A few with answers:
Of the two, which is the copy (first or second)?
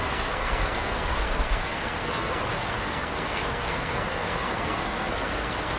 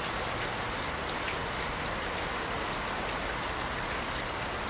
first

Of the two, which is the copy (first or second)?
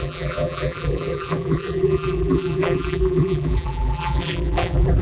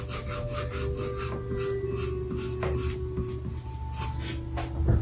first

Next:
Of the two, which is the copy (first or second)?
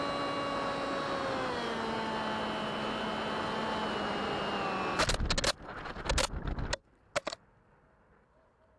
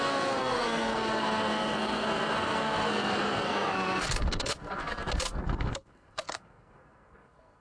second